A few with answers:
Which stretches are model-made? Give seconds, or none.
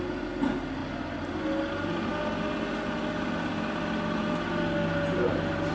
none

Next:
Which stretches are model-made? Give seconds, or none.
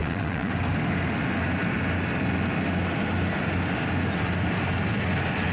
0.0-0.5 (vocoder, WaveNeXt)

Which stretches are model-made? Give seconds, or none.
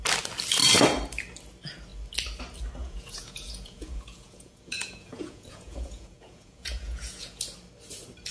2.8-7.4 (vocoder, Vocos)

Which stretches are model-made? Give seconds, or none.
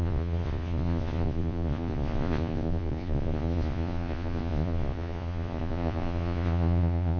0.0-7.2 (vocoder, Vocos)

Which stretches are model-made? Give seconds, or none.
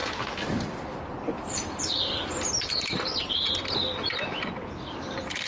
0.0-3.3 (vocoder, BigVGAN v2)